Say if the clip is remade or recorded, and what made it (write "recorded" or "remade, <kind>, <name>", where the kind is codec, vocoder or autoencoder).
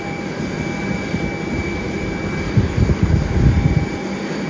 recorded